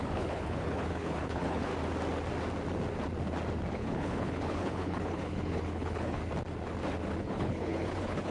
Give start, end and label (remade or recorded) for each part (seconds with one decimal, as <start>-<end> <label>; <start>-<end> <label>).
0.0-1.7 remade; 1.7-3.7 recorded; 3.7-6.2 remade; 6.2-7.2 recorded; 7.2-8.3 remade